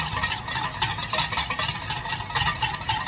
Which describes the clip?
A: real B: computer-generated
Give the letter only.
A